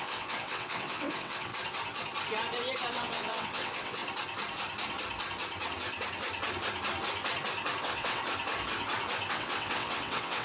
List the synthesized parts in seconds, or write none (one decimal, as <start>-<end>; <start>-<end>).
0.0-1.5; 2.9-4.0; 7.8-8.2; 9.3-10.4